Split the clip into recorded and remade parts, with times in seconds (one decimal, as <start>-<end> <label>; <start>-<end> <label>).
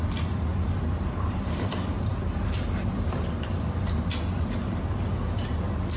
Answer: 0.0-0.5 recorded; 0.5-4.1 remade; 4.1-6.0 recorded